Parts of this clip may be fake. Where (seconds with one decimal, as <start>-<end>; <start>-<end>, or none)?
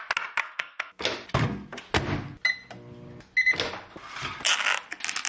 0.4-1.0